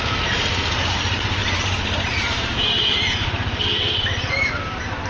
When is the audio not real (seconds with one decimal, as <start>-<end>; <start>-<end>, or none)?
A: 1.4-4.5